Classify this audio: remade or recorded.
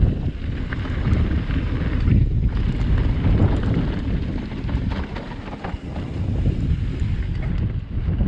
recorded